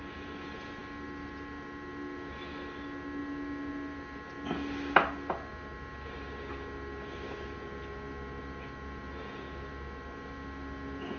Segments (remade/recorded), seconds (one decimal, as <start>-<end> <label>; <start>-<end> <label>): 0.0-11.2 recorded